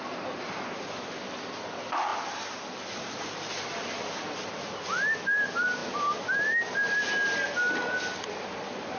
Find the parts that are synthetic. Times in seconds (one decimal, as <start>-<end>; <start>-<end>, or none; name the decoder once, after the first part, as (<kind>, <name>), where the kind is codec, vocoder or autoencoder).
none